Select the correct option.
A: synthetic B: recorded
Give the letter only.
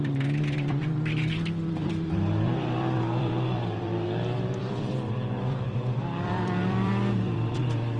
A